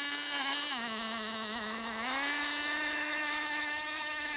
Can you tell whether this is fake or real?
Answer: fake